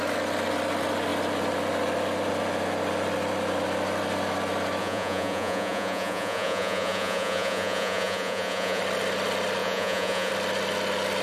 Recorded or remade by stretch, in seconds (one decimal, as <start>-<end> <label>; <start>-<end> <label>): 0.0-4.8 recorded; 4.8-8.8 remade; 8.8-9.6 recorded; 9.6-10.3 remade; 10.3-11.2 recorded